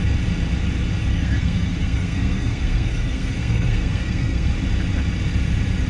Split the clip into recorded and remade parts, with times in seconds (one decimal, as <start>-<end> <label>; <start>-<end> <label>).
0.0-1.1 recorded; 1.1-4.5 remade; 4.5-5.9 recorded